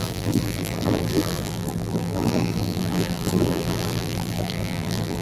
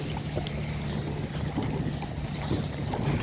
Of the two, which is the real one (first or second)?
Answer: second